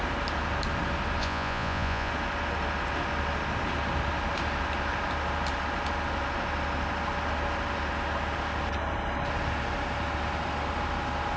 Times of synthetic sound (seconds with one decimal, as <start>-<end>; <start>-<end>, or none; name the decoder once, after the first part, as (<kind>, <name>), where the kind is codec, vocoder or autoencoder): 1.2-2.1 (vocoder, Vocos)